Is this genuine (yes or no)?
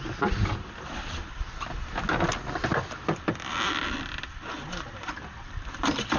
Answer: yes